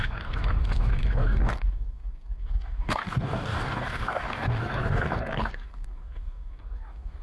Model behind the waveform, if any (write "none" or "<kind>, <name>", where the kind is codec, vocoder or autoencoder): codec, DAC